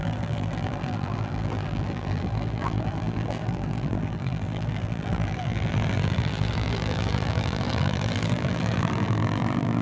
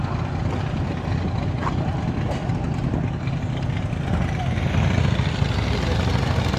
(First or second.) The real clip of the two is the second